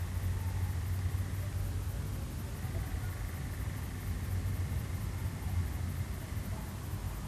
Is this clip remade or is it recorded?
recorded